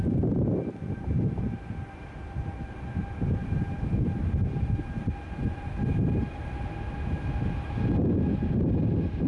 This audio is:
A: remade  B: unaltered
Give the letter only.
B